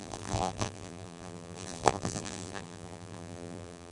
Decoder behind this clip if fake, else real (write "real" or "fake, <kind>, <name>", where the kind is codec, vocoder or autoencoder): fake, vocoder, BigVGAN v2